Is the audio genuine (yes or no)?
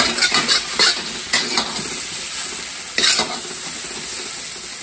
yes